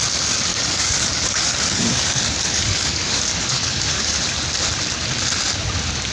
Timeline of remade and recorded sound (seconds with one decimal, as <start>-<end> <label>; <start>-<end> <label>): 0.0-0.5 recorded; 0.5-4.2 remade; 4.2-6.1 recorded